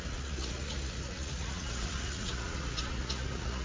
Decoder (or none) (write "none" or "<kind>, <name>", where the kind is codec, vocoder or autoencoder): vocoder, Vocos